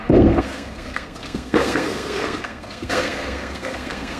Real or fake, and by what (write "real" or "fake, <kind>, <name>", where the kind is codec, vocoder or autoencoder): fake, codec, SNAC